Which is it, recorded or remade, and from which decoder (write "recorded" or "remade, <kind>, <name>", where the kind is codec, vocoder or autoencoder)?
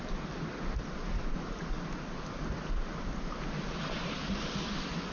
recorded